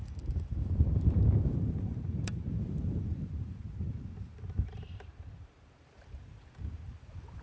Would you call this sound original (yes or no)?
no